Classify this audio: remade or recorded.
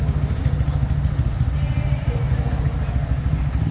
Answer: recorded